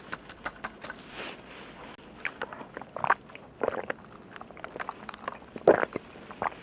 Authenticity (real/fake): real